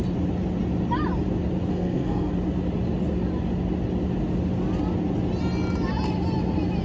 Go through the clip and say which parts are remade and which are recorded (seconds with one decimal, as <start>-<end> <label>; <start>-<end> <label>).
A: 0.0-1.7 recorded; 1.7-2.3 remade; 2.3-6.8 recorded